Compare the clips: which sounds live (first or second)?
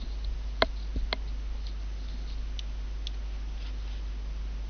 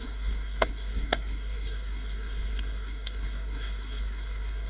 first